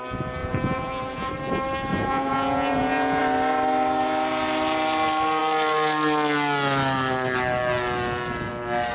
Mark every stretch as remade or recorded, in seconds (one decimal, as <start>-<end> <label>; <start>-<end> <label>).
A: 0.0-0.4 recorded; 0.4-1.3 remade; 1.3-1.9 recorded; 1.9-3.2 remade; 3.2-8.9 recorded